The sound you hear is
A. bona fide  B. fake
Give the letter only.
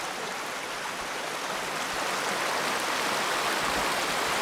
A